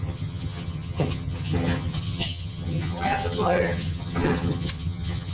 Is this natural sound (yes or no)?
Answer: no